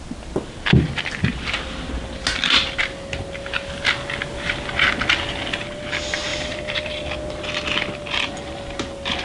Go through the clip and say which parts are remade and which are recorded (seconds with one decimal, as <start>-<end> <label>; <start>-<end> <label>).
0.0-6.3 recorded; 6.3-7.1 remade; 7.1-9.2 recorded